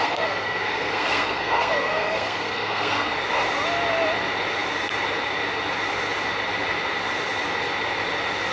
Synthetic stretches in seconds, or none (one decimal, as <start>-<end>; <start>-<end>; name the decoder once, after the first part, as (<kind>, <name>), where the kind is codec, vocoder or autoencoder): 0.0-3.1 (codec, SNAC)